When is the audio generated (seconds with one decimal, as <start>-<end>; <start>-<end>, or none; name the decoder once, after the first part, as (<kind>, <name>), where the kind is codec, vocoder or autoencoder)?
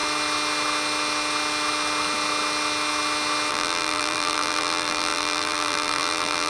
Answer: 3.5-6.5 (vocoder, BigVGAN v2)